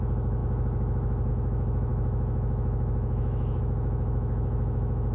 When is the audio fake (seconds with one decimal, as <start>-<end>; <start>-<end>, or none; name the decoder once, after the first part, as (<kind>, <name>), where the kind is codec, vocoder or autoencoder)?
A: 0.0-5.1 (autoencoder, DAC-VAE)